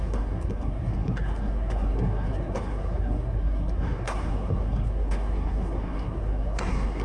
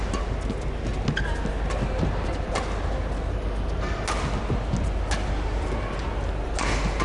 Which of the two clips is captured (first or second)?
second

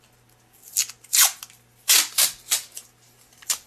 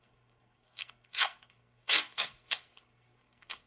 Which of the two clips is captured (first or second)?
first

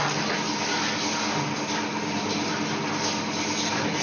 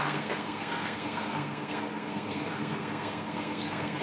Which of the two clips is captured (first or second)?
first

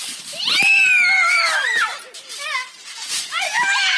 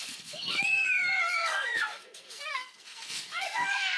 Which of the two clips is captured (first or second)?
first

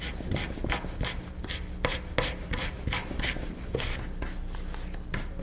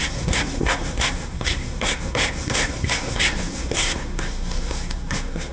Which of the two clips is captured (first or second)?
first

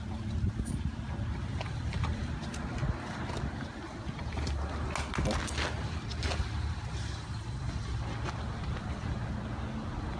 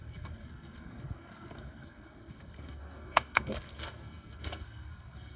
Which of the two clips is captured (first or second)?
first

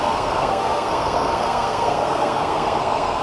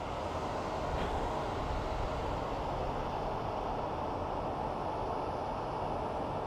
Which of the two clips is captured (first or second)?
second